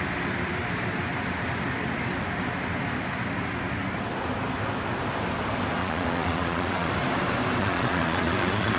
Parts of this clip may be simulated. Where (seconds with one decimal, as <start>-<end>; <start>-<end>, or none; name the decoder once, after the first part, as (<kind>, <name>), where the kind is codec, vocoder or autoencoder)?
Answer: 5.8-6.9 (vocoder, Vocos); 7.6-8.8